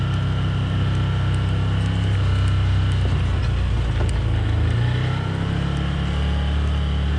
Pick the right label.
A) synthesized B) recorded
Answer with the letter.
B